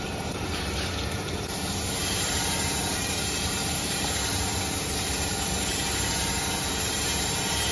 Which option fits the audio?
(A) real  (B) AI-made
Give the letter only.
B